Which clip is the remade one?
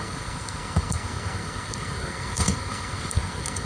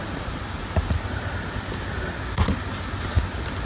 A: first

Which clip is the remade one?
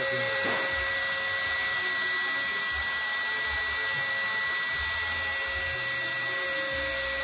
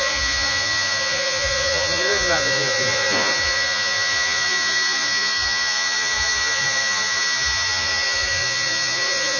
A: second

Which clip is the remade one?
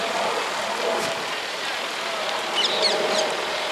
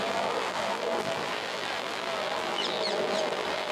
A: second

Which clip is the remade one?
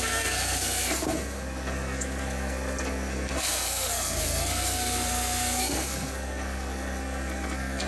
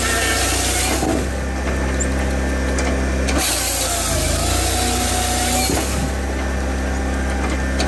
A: first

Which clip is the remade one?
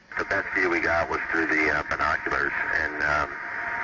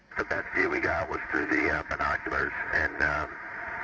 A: second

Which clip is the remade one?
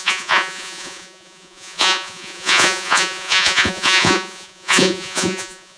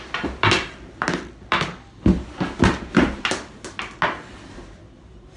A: first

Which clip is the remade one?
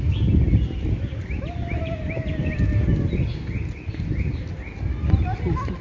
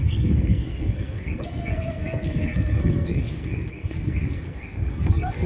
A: second